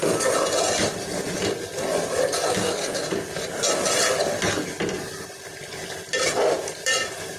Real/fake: real